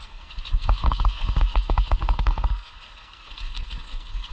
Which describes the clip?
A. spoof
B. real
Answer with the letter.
A